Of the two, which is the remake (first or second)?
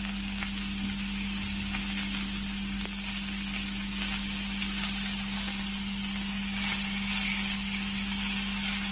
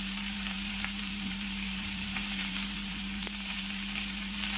second